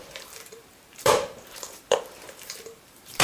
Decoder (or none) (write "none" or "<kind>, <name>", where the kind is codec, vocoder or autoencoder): vocoder, BigVGAN v2